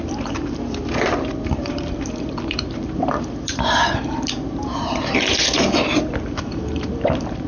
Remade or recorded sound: remade